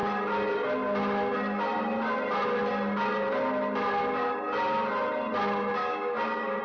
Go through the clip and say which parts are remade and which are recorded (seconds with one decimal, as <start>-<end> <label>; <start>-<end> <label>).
0.0-5.8 recorded; 5.8-6.6 remade